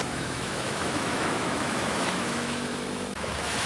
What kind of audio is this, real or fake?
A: fake